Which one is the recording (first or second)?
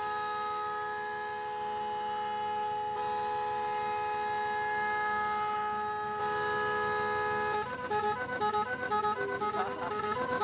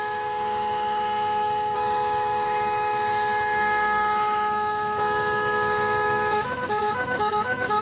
first